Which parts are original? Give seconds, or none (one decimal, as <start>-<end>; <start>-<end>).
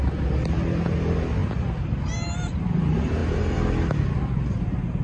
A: 0.0-5.0